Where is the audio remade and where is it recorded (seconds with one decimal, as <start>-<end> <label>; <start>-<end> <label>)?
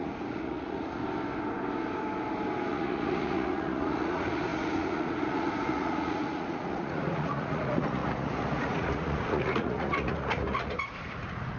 0.0-1.0 remade; 1.0-2.7 recorded; 2.7-11.6 remade